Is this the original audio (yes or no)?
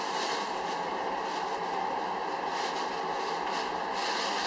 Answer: yes